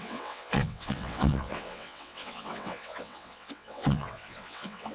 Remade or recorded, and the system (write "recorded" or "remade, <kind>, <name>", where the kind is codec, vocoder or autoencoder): remade, vocoder, WaveNeXt